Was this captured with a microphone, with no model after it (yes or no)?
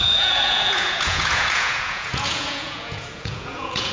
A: no